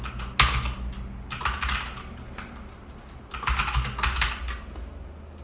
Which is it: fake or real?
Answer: real